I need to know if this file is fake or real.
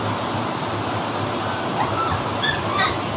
real